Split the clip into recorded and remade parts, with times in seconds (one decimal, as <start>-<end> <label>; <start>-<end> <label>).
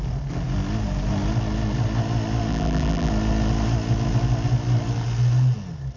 0.0-2.5 recorded; 2.5-3.1 remade; 3.1-6.0 recorded